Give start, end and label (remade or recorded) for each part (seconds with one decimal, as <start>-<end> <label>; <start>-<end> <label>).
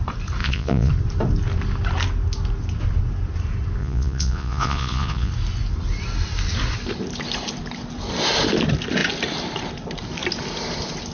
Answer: 0.0-0.4 recorded; 0.4-0.9 remade; 0.9-3.8 recorded; 3.8-5.3 remade; 5.3-11.1 recorded